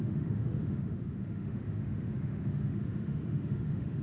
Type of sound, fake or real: fake